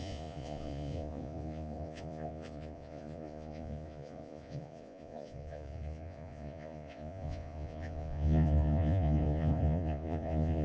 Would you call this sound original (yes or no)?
no